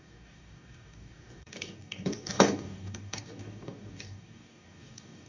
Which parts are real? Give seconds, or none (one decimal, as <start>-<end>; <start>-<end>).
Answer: none